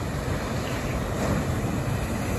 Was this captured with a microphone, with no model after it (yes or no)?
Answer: yes